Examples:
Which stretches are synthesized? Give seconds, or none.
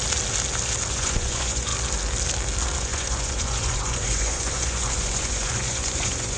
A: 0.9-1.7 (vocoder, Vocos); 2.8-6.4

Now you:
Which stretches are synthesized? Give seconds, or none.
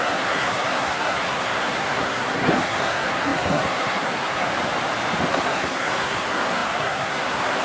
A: 0.0-4.5 (codec, SNAC); 5.3-7.6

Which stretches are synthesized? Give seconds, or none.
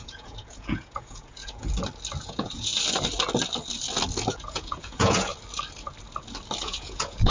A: 0.0-1.6 (vocoder, Vocos); 2.2-2.7; 4.3-5.3; 6.6-7.3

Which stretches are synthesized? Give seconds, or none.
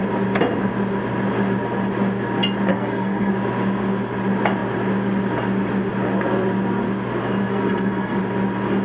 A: 2.7-3.3 (codec, SNAC); 7.4-8.2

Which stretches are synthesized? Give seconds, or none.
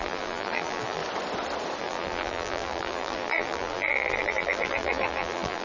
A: 0.0-1.0 (vocoder, BigVGAN v2); 1.8-5.6